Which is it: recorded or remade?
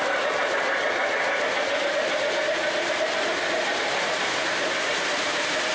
remade